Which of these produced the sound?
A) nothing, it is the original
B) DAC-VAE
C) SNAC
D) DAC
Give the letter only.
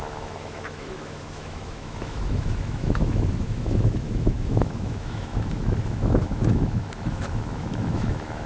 B